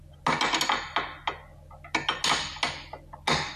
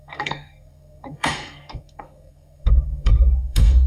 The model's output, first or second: second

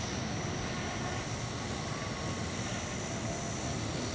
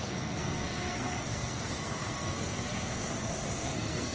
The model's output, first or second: second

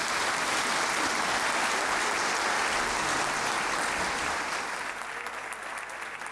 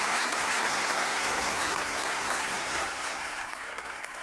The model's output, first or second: second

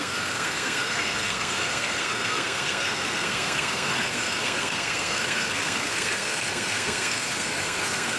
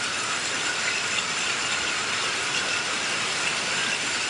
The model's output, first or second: first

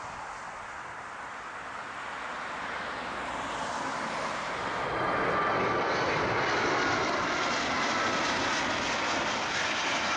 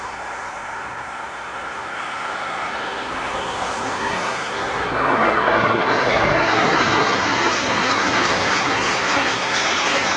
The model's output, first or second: second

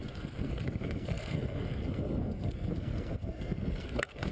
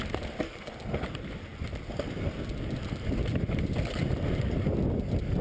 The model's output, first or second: first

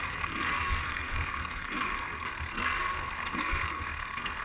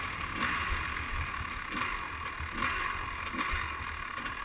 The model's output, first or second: first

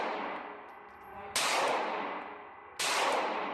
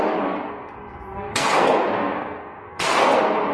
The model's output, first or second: second